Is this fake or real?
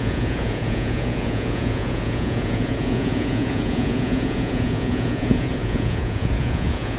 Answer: fake